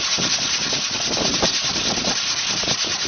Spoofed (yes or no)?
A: no